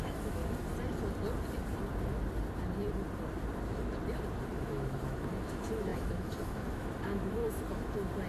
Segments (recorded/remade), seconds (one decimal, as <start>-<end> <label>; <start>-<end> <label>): 0.0-0.4 remade; 0.4-4.6 recorded; 4.6-7.4 remade; 7.4-8.3 recorded